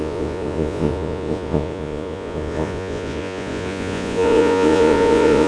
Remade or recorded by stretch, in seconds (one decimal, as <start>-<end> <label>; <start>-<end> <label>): 0.0-5.5 remade